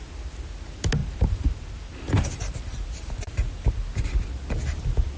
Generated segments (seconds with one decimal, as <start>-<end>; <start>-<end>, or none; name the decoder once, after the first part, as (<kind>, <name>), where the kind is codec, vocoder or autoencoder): 1.0-4.1 (vocoder, BigVGAN v2)